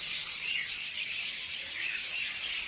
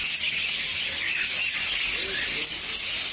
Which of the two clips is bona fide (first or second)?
second